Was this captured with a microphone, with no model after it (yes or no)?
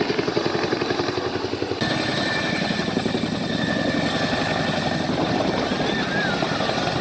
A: yes